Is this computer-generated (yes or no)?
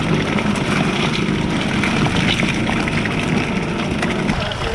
no